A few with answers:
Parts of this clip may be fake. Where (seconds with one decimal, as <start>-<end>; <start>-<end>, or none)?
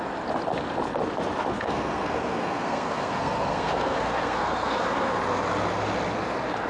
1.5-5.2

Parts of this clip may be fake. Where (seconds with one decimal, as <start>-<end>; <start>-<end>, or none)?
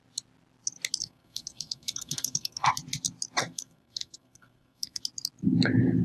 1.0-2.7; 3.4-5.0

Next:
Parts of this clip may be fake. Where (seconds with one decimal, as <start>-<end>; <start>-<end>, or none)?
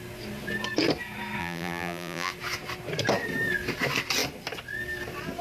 1.4-2.3